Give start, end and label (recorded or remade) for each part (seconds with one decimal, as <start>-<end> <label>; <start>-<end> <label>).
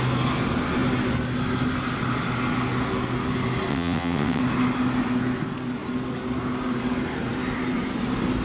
0.0-3.7 recorded; 3.7-4.4 remade; 4.4-8.4 recorded